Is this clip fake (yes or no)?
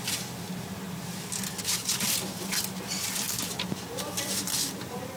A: no